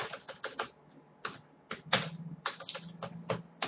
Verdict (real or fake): real